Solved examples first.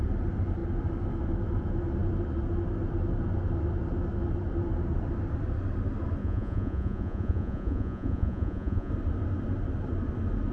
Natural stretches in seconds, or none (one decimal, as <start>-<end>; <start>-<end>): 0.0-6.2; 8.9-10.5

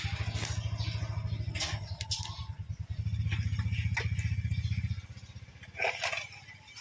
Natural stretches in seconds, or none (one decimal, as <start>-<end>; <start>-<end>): 0.0-6.8

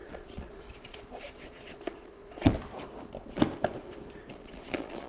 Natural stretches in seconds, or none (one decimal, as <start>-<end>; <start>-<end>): 2.5-4.3

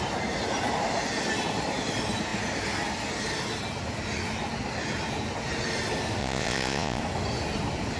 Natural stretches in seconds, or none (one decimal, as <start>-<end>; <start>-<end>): 0.0-6.2; 7.0-8.0

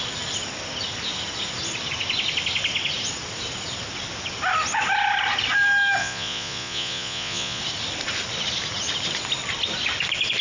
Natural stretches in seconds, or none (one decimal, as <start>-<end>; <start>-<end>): 0.0-6.0; 7.6-10.4

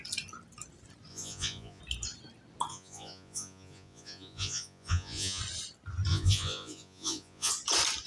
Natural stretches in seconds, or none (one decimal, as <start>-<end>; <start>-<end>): 0.0-1.1; 1.8-2.7; 5.4-6.1; 7.5-8.1